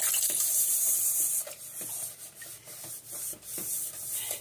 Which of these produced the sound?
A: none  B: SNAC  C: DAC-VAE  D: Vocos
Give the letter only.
A